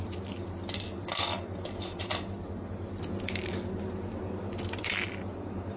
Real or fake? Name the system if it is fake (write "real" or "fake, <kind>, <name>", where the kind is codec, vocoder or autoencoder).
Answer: real